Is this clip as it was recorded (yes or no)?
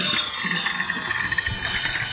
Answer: yes